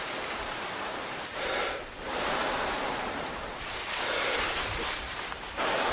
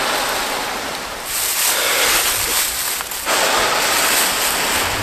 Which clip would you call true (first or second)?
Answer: second